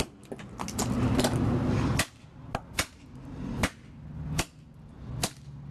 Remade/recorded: recorded